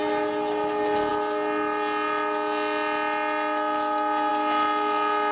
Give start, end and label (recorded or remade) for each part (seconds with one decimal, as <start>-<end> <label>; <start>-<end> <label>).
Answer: 0.0-5.3 recorded